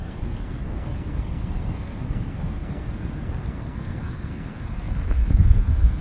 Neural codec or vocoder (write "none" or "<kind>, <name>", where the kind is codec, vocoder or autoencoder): codec, SNAC